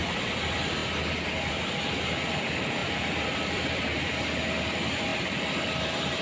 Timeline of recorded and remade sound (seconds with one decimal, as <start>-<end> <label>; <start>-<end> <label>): 0.0-0.8 remade; 0.8-1.5 recorded; 1.5-6.2 remade